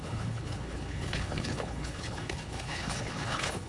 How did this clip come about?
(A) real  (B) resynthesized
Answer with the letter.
B